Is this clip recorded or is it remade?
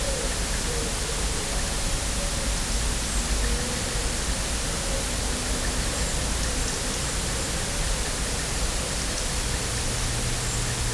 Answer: recorded